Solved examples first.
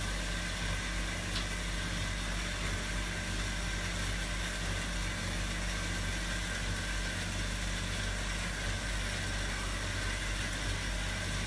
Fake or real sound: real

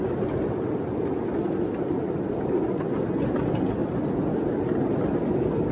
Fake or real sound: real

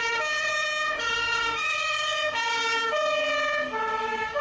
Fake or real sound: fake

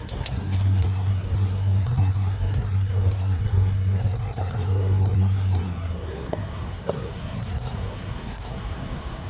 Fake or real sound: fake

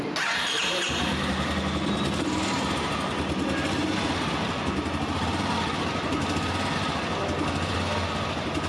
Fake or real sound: real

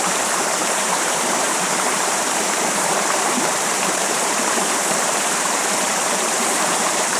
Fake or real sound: fake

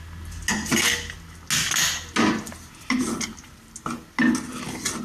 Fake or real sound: real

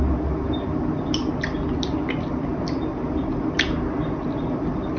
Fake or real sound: real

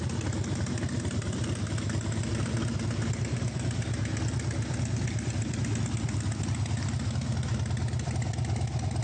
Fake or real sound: real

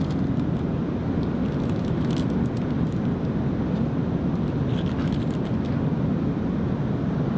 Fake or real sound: real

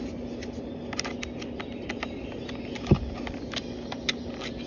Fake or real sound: real